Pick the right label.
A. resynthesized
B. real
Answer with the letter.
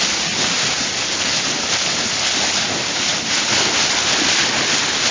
B